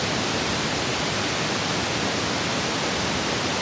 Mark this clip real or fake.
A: real